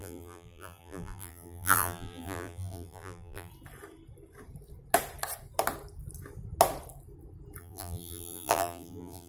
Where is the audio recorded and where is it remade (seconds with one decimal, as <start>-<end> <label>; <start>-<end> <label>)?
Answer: 0.0-3.5 remade; 3.5-7.6 recorded; 7.6-9.3 remade